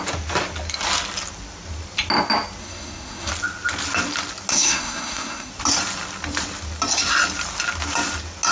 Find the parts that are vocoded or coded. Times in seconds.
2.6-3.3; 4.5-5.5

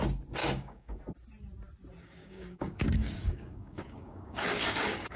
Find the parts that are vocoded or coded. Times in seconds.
0.4-1.0; 2.0-5.2

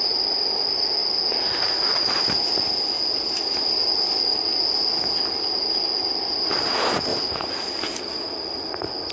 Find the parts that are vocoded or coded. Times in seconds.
7.1-9.1

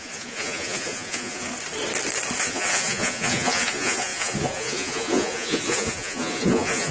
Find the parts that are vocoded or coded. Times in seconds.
0.0-1.5; 2.4-6.9

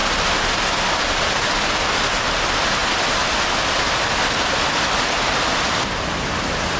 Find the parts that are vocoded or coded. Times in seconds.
none